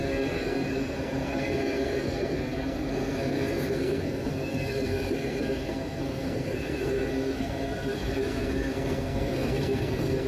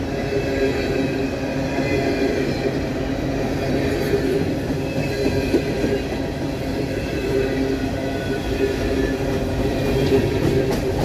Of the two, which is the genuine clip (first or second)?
second